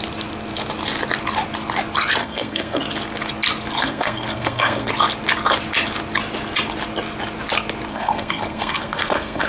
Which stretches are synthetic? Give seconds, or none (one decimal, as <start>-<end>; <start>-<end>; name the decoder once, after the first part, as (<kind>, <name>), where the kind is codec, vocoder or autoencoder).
2.2-2.8 (codec, SNAC); 3.8-4.9; 7.9-9.5